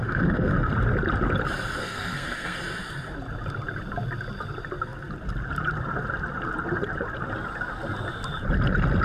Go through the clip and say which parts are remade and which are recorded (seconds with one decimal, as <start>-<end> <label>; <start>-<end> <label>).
0.0-0.7 remade; 0.7-1.8 recorded; 1.8-2.6 remade; 2.6-9.0 recorded